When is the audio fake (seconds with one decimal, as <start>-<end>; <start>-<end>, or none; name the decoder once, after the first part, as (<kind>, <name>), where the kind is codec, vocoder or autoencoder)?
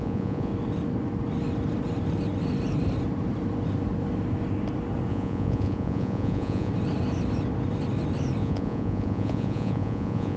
0.0-0.5 (vocoder, Vocos); 5.1-6.7; 8.4-10.4